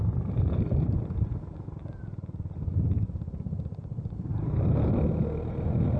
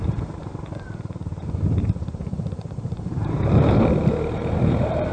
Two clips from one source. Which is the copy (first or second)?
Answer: second